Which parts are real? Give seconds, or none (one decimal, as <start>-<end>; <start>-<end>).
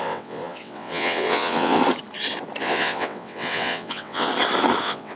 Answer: 1.8-2.6; 4.3-4.8